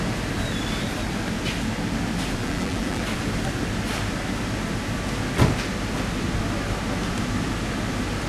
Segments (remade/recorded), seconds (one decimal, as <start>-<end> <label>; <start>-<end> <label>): 0.0-2.4 recorded; 2.4-3.0 remade; 3.0-8.3 recorded